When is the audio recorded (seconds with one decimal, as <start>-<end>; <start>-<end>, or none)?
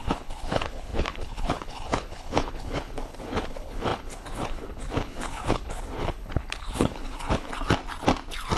7.5-8.6